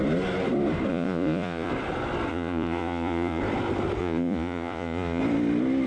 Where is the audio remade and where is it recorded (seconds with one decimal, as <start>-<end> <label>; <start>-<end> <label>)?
0.0-0.9 recorded; 0.9-1.7 remade; 1.7-2.3 recorded; 2.3-3.4 remade; 3.4-4.0 recorded; 4.0-5.2 remade; 5.2-5.9 recorded